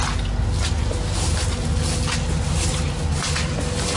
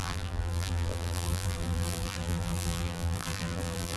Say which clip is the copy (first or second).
second